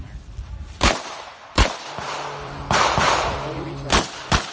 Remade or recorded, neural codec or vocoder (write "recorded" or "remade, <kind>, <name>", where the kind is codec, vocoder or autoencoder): remade, vocoder, BigVGAN v2